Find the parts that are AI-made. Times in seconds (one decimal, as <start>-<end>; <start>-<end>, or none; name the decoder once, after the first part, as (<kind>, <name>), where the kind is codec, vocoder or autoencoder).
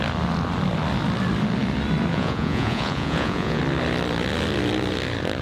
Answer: 2.1-3.6 (vocoder, Vocos)